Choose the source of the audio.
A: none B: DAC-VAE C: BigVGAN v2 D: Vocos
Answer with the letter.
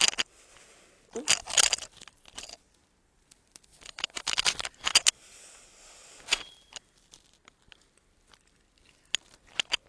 A